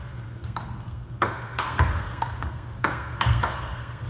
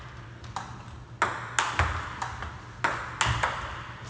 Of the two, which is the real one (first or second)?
second